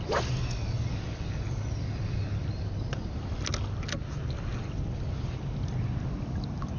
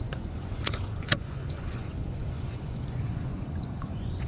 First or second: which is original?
first